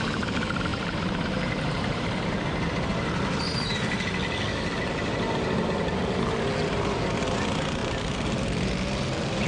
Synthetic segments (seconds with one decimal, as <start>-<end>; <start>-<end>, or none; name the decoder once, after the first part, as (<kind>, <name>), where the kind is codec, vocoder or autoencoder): 0.7-2.3 (vocoder, BigVGAN v2); 7.8-9.5